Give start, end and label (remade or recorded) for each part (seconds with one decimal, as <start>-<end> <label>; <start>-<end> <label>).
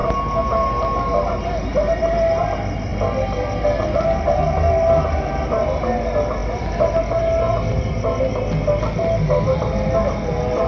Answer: 0.0-10.7 recorded